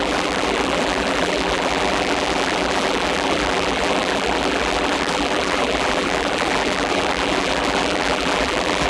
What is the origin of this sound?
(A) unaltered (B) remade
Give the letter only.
B